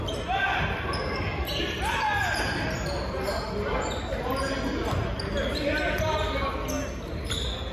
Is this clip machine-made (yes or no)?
no